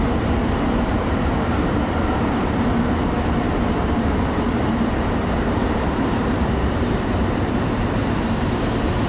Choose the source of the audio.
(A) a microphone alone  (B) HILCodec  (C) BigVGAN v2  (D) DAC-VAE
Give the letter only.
C